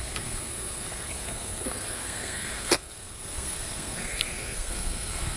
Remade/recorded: remade